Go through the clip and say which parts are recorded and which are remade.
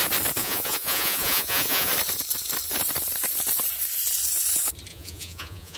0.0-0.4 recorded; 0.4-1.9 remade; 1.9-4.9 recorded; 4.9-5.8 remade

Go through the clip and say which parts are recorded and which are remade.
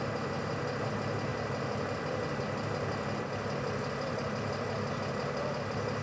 0.0-6.0 recorded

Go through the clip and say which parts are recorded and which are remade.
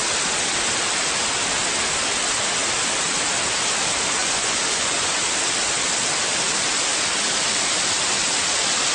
0.0-4.2 recorded; 4.2-5.2 remade; 5.2-8.9 recorded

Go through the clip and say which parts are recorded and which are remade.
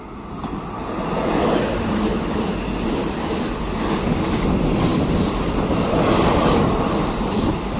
0.0-7.8 recorded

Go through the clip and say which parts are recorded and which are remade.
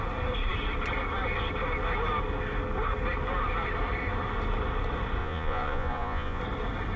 0.0-5.2 recorded; 5.2-6.4 remade; 6.4-7.0 recorded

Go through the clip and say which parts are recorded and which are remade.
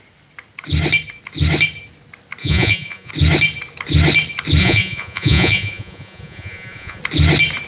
0.0-2.4 recorded; 2.4-3.1 remade; 3.1-4.6 recorded; 4.6-7.0 remade; 7.0-7.7 recorded